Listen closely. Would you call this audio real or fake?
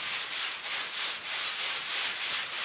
real